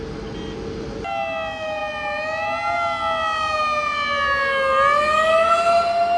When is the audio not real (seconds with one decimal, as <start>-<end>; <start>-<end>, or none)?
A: none